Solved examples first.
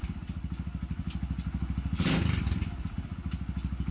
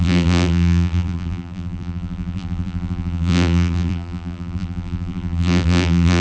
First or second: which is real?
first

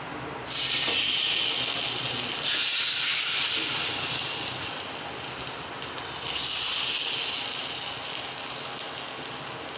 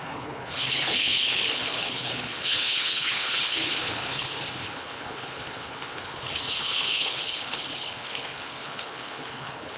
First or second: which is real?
first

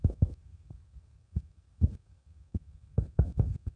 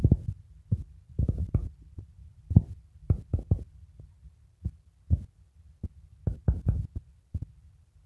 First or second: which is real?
second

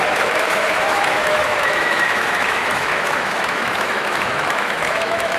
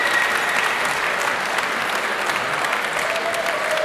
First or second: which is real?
second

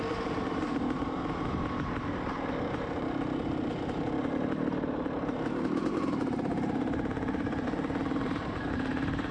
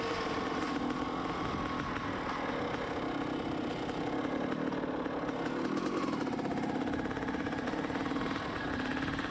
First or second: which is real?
second